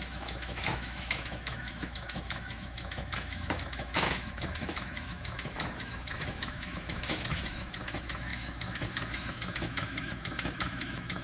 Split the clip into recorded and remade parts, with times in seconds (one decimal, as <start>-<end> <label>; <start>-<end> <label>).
0.0-11.2 remade